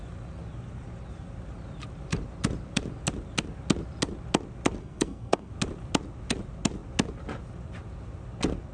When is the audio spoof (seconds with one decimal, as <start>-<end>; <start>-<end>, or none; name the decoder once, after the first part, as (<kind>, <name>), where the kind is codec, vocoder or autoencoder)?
4.8-5.5 (codec, SNAC)